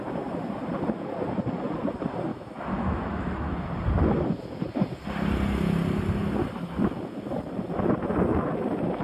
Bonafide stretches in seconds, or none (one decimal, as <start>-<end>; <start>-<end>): 0.0-2.3; 3.6-9.0